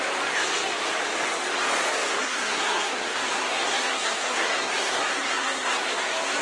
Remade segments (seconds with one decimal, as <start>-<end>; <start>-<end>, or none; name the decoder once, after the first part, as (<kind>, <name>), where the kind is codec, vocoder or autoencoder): 2.2-6.0 (codec, SNAC)